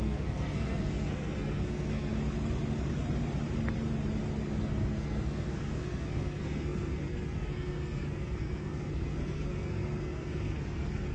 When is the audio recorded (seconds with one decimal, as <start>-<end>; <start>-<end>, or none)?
2.1-4.6